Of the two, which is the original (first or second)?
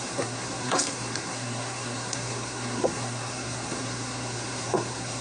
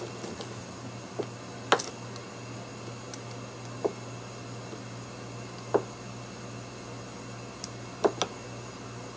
second